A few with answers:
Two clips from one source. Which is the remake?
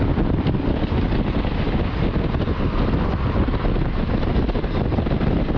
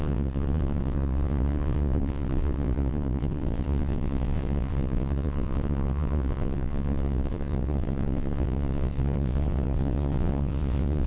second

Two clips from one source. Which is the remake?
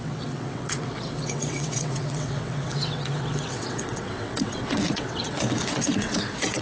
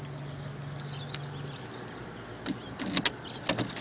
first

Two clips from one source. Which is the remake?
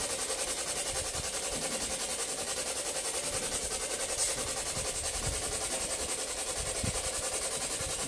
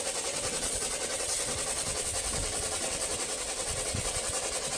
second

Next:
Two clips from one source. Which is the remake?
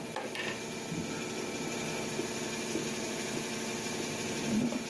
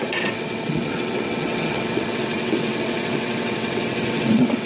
second